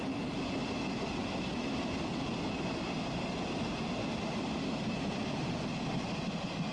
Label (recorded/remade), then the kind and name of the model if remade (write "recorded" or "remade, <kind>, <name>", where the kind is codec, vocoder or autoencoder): recorded